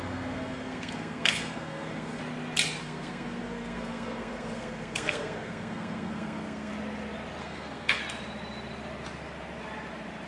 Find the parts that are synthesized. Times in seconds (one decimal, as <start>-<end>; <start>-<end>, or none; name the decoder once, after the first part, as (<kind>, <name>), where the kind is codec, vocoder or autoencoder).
0.0-2.2 (codec, SNAC); 2.8-6.7; 7.4-8.0